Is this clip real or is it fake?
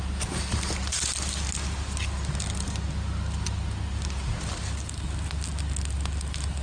real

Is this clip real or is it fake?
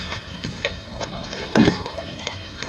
fake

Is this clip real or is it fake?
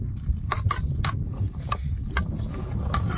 real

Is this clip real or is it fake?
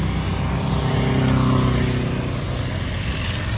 real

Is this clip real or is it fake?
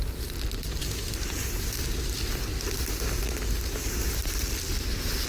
real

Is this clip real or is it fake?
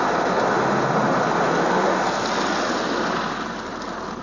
real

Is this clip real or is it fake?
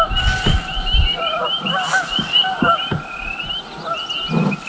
real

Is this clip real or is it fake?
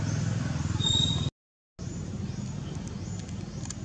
real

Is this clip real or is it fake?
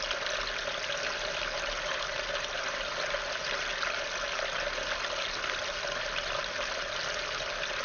real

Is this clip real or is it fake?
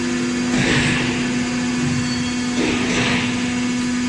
real